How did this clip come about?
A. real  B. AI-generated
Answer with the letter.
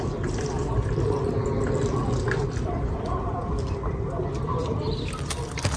A